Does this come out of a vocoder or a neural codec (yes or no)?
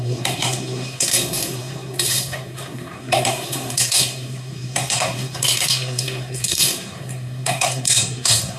yes